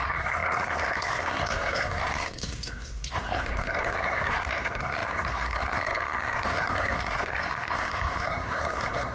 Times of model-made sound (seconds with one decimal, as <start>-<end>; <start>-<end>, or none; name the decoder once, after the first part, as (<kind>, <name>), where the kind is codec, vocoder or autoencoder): 0.0-9.1 (codec, SNAC)